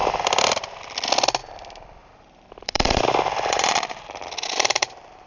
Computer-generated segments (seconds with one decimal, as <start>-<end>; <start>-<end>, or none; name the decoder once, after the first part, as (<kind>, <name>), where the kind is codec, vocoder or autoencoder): 2.0-5.3 (vocoder, BigVGAN v2)